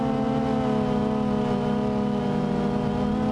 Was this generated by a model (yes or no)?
no